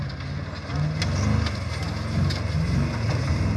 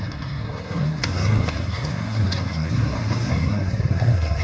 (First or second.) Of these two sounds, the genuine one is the first